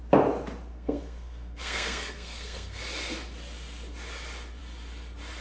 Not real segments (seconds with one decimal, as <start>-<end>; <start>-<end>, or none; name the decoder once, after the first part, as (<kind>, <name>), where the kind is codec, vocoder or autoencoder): 0.7-2.8 (codec, SNAC)